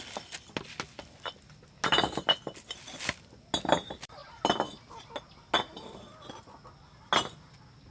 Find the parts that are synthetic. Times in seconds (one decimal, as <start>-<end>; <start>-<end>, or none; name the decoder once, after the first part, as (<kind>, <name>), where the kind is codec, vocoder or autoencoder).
none